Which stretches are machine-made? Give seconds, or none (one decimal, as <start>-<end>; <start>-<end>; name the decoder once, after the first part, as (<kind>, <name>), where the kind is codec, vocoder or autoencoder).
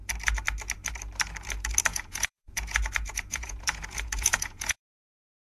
1.9-4.8 (vocoder, Vocos)